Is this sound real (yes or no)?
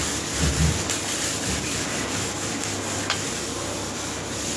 yes